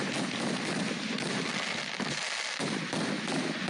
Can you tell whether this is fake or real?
real